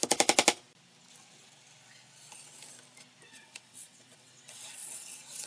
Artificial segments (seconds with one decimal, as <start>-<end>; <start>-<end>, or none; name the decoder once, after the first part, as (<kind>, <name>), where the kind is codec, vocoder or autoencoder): 3.3-5.5 (vocoder, WaveNeXt)

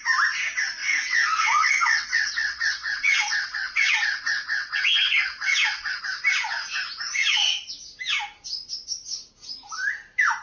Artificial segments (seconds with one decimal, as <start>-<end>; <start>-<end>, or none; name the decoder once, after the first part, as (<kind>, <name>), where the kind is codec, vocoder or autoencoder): 0.8-6.0 (vocoder, WaveNeXt); 7.2-7.7

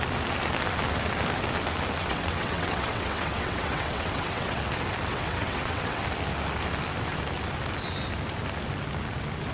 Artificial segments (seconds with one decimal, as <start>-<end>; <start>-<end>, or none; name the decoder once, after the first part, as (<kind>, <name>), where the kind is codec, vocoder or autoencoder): 2.0-4.6 (vocoder, WaveNeXt); 5.1-6.0

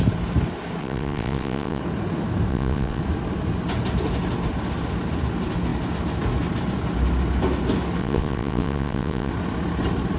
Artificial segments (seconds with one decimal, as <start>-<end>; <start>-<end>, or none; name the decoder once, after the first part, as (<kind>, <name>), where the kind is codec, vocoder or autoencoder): 0.8-1.8 (vocoder, WaveNeXt); 2.5-3.0; 8.0-9.3

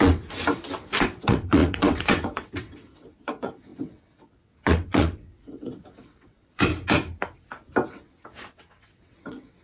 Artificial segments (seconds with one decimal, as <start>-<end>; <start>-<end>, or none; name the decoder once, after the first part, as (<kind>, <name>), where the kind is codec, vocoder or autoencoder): 0.0-0.4 (vocoder, WaveNeXt); 1.0-6.7; 7.9-9.6